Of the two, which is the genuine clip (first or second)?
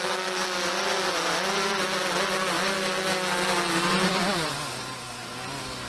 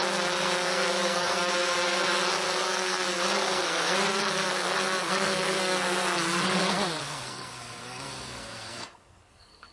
first